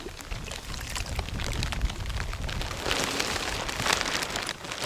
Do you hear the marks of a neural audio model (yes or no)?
no